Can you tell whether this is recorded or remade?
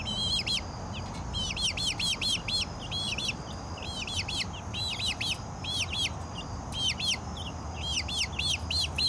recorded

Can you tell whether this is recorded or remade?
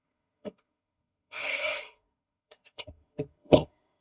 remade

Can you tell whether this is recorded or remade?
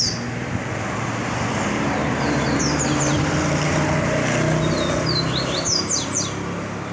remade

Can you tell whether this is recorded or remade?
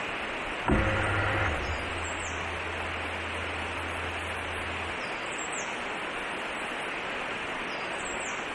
recorded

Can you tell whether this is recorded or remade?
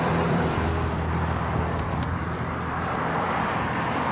remade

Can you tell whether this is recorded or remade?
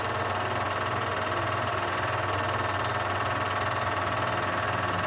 recorded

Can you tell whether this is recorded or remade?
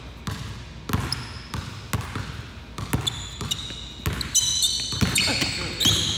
recorded